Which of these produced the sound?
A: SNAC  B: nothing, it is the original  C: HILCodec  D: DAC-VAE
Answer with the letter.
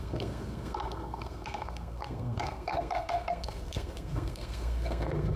A